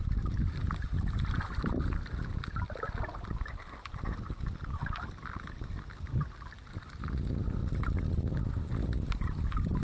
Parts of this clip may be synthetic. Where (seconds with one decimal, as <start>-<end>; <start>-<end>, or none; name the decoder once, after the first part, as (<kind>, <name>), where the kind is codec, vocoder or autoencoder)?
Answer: none